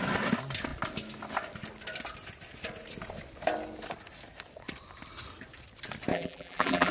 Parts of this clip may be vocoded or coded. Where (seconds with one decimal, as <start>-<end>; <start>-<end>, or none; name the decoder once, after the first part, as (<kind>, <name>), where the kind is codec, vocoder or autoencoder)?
6.1-6.9 (vocoder, BigVGAN v2)